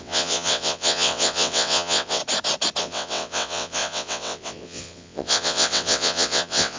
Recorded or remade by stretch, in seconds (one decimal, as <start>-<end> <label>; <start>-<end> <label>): 0.0-2.2 remade; 2.2-2.8 recorded; 2.8-6.8 remade